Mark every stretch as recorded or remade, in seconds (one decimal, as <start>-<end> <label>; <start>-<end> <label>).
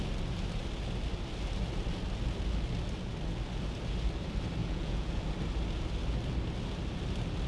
0.0-4.6 recorded; 4.6-5.2 remade; 5.2-7.5 recorded